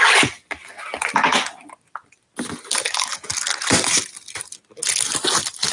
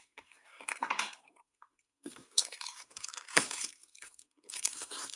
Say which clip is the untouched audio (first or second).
first